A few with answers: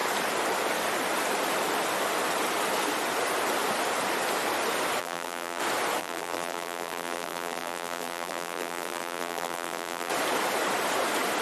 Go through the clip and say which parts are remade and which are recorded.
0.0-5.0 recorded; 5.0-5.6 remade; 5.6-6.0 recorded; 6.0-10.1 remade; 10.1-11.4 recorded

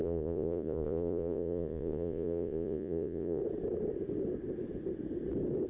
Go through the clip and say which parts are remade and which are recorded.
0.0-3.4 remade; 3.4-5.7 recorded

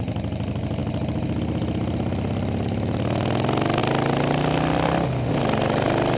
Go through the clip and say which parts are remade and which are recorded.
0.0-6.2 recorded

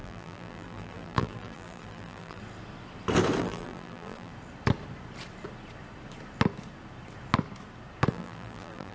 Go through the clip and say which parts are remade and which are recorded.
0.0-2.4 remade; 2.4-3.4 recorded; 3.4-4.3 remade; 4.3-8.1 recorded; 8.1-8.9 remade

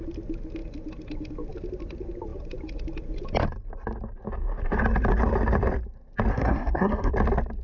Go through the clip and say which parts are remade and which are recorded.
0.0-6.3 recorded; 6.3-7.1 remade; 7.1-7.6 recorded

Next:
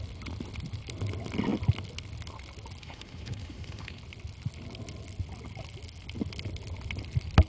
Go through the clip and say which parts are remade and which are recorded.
0.0-2.8 recorded; 2.8-4.0 remade; 4.0-7.5 recorded